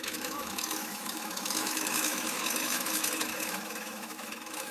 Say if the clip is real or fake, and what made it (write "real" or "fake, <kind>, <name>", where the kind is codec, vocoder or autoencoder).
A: fake, autoencoder, DAC-VAE